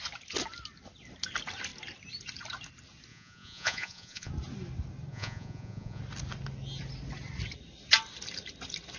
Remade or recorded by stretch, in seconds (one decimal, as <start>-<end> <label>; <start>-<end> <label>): 0.0-3.1 recorded; 3.1-4.3 remade; 4.3-5.1 recorded; 5.1-6.0 remade; 6.0-9.0 recorded